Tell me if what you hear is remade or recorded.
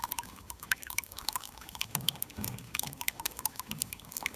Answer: remade